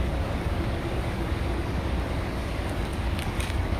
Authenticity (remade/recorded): remade